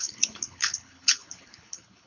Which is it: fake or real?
fake